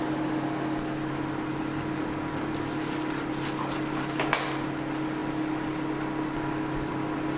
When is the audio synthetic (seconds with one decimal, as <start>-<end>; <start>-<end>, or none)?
none